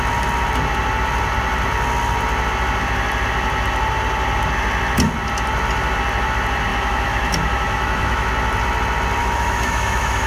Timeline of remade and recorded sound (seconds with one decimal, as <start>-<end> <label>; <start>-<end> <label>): 0.0-6.7 recorded; 6.7-8.3 remade; 8.3-9.2 recorded; 9.2-10.3 remade